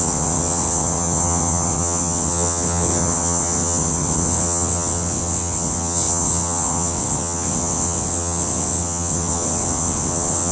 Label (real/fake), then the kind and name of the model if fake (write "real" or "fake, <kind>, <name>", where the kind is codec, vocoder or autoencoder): fake, vocoder, WaveNeXt